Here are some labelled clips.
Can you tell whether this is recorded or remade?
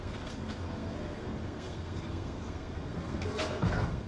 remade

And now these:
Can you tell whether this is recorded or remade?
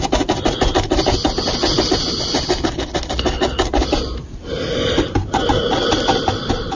recorded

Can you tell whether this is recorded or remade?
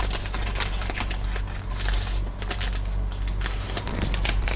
recorded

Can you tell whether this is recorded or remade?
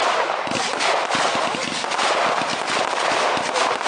recorded